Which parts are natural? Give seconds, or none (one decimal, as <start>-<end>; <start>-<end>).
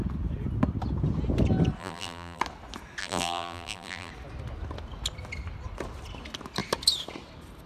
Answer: 0.0-1.8; 2.4-3.0; 4.1-7.7